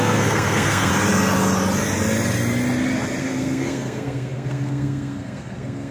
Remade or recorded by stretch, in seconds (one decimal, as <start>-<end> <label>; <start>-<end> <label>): 0.0-0.9 remade; 0.9-3.2 recorded; 3.2-5.9 remade